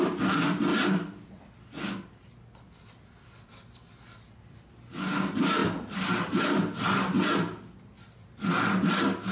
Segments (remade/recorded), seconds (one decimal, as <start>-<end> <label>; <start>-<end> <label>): 0.0-9.3 recorded